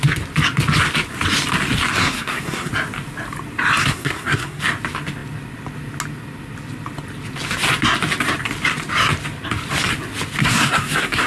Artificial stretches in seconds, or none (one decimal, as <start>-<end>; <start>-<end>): 2.0-2.7; 3.8-4.6; 10.4-11.3